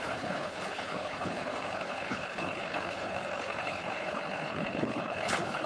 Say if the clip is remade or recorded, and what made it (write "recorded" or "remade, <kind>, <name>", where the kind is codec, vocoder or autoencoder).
remade, codec, HILCodec